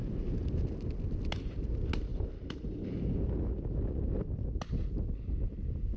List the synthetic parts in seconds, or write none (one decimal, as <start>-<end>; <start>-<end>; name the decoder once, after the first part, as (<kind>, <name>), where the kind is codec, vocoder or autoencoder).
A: 2.1-4.6 (vocoder, BigVGAN v2)